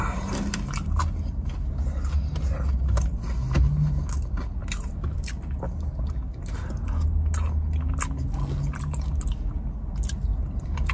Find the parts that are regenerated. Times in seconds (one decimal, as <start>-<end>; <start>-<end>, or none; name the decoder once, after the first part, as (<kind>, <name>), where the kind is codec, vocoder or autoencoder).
4.6-5.3 (vocoder, BigVGAN v2)